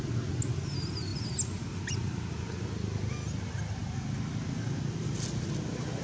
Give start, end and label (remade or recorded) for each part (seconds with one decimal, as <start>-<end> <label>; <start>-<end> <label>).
0.0-6.0 recorded